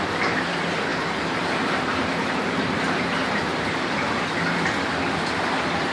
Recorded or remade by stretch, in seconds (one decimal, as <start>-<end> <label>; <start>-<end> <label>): 0.0-0.9 recorded; 0.9-4.1 remade; 4.1-5.9 recorded